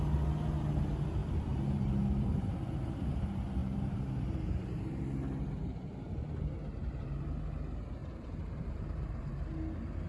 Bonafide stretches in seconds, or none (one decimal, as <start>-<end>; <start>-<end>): 0.0-1.2; 2.2-3.6; 5.0-8.0; 9.3-10.1